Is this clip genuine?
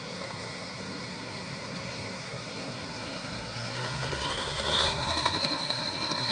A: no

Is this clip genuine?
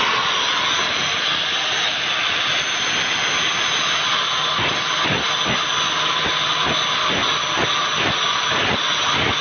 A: yes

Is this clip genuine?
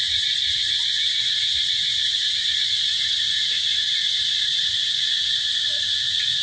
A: no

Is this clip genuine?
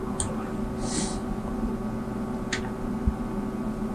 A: yes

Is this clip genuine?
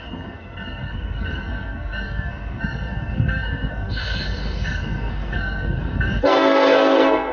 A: no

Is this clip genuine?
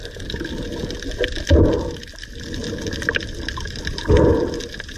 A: yes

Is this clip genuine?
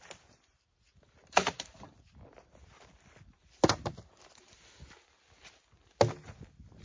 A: yes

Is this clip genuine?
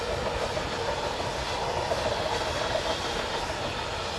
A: yes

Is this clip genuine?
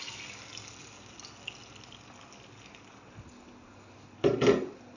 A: yes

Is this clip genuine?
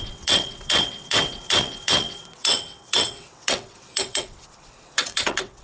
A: no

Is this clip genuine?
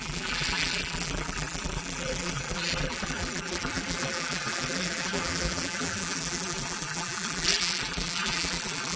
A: no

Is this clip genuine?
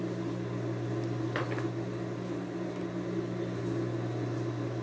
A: yes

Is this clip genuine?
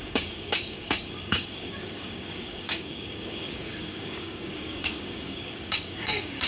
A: no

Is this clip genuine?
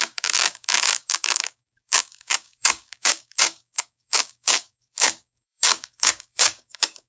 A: no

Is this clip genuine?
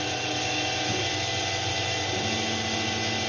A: yes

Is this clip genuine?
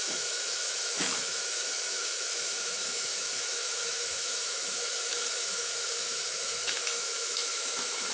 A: no